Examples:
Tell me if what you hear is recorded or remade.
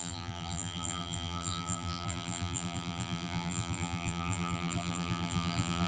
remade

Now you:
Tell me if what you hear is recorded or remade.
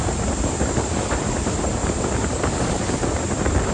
remade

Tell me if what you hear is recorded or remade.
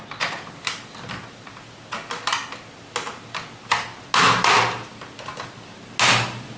recorded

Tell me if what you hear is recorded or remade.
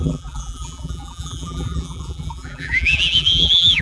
remade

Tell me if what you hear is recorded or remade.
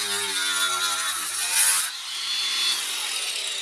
recorded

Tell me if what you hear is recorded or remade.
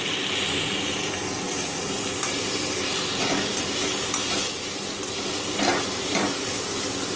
recorded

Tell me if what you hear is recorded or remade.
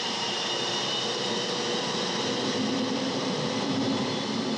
remade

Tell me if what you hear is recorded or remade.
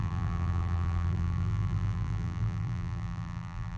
remade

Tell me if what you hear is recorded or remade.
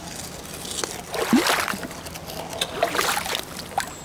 recorded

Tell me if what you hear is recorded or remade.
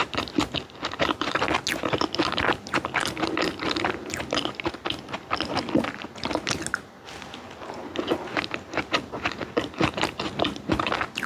recorded